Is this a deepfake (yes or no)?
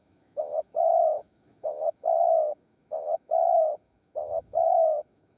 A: yes